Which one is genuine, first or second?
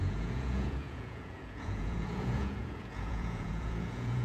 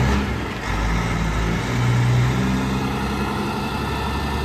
second